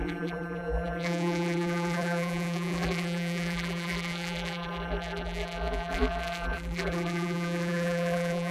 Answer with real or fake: fake